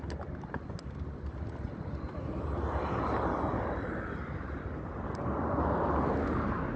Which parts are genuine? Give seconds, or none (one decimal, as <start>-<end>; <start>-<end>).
0.0-6.8